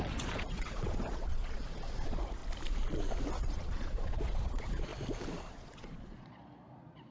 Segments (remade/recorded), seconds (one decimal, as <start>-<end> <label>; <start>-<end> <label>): 0.0-2.4 remade; 2.4-3.4 recorded; 3.4-4.9 remade; 4.9-5.5 recorded; 5.5-7.1 remade